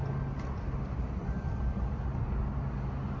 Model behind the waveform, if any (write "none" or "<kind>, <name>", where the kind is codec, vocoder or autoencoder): none